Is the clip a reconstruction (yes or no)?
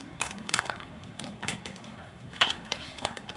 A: yes